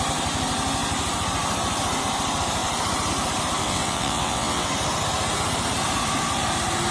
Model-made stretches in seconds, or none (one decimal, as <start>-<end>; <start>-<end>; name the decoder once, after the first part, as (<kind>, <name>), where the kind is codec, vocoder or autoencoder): 3.6-4.7 (vocoder, WaveNeXt)